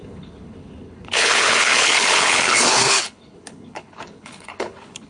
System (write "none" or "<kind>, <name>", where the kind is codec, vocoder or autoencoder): codec, HILCodec